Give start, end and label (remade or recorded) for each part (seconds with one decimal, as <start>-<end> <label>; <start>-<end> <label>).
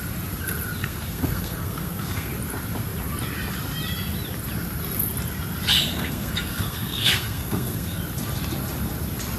0.0-0.8 recorded; 0.8-2.3 remade; 2.3-5.9 recorded; 5.9-8.0 remade; 8.0-9.4 recorded